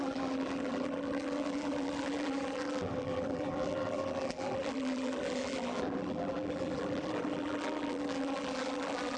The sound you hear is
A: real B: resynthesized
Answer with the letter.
B